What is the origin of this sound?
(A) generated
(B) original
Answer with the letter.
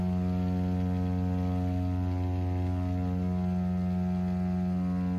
B